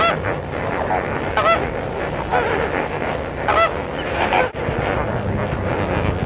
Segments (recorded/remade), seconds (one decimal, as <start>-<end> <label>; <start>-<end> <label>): 0.0-6.3 recorded